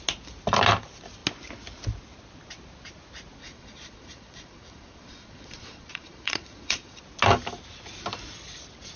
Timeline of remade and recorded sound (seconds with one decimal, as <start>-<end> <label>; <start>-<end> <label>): 0.0-3.4 recorded; 3.4-7.0 remade; 7.0-9.0 recorded